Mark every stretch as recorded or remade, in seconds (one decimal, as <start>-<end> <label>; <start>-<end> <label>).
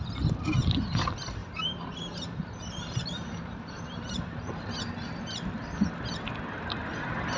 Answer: 0.0-1.4 recorded; 1.4-4.7 remade; 4.7-7.4 recorded